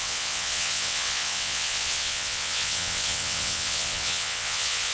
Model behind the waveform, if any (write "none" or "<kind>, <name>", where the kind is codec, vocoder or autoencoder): vocoder, WaveNeXt